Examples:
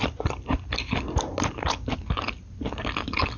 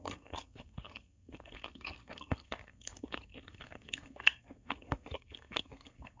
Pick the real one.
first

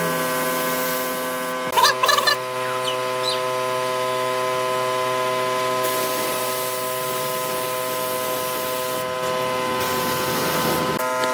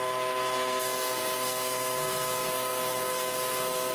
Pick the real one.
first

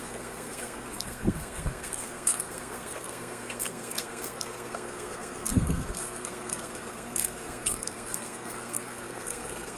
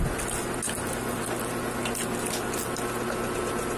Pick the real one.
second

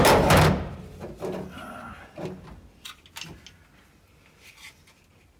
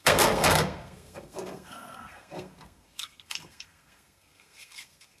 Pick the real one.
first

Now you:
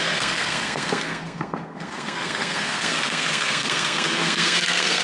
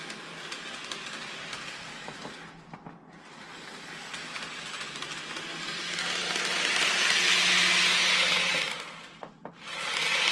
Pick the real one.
second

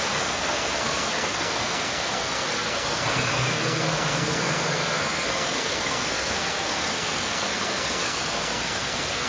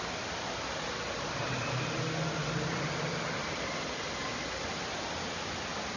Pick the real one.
second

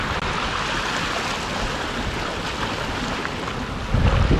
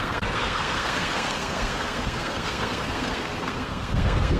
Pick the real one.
first